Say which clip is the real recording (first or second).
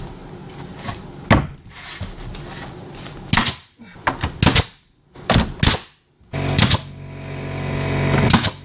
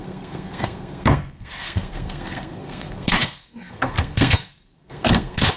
first